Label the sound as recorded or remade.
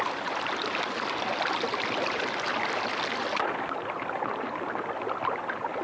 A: recorded